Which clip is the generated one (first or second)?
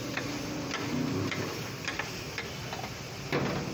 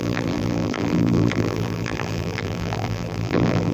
second